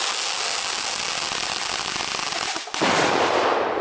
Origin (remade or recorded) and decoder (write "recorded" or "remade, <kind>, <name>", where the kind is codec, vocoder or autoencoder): recorded